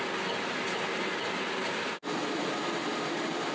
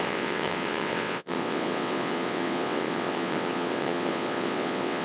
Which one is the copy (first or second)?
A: second